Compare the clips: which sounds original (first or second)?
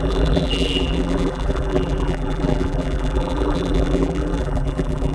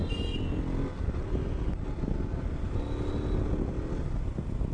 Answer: second